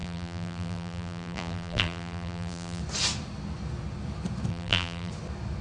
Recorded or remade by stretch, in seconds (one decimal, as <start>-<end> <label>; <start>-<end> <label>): 0.0-2.8 remade; 2.8-4.5 recorded; 4.5-5.1 remade; 5.1-5.6 recorded